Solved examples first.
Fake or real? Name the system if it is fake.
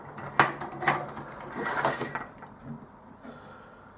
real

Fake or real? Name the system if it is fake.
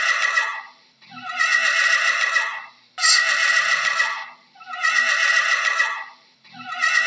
real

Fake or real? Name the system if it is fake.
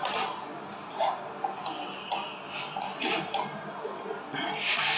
real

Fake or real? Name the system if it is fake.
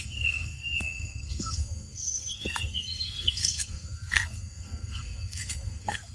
fake, codec, SNAC